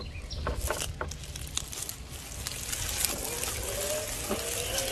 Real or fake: real